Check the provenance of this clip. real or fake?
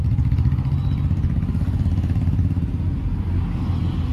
real